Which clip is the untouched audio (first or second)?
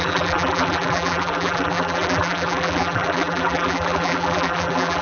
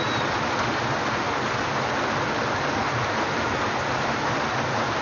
second